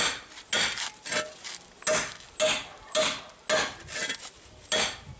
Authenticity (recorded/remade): recorded